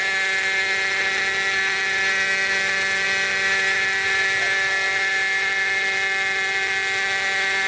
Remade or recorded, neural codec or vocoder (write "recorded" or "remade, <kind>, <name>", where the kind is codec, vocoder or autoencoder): recorded